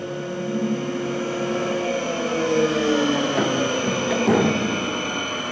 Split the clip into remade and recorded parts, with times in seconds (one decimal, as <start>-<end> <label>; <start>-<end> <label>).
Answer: 0.0-5.5 recorded